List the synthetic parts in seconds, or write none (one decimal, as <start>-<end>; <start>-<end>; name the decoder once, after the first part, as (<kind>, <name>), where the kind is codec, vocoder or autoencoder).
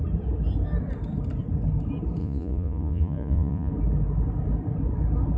2.2-3.7 (vocoder, Vocos)